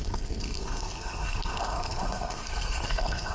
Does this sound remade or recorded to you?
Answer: remade